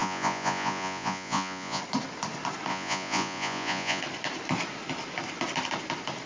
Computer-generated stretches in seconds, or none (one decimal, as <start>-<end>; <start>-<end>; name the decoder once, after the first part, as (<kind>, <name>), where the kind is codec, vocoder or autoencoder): 0.0-1.8 (vocoder, Vocos); 2.7-4.0